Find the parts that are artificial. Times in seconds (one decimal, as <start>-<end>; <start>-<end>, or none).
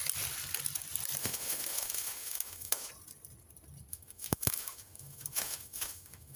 1.2-2.9; 3.9-6.4